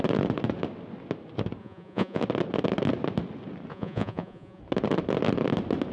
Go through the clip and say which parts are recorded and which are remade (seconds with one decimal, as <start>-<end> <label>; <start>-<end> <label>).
0.0-1.6 recorded; 1.6-2.2 remade; 2.2-3.7 recorded; 3.7-4.6 remade; 4.6-5.9 recorded